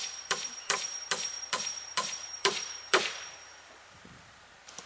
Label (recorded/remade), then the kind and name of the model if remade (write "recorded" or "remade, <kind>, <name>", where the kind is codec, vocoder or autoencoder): remade, vocoder, BigVGAN v2